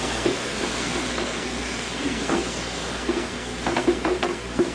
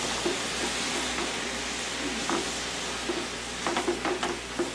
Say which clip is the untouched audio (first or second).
second